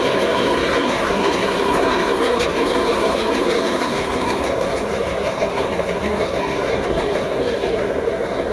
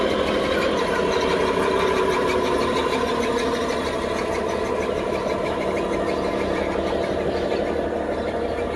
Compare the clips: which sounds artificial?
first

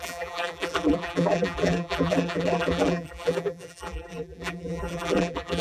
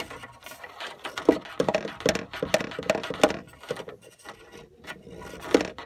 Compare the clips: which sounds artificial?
first